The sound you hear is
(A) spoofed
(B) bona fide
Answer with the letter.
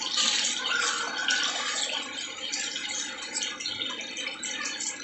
B